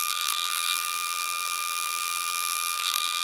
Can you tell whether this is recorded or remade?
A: remade